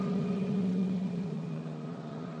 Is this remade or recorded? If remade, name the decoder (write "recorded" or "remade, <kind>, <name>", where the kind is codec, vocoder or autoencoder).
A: remade, vocoder, Vocos